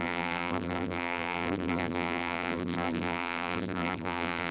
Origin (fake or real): fake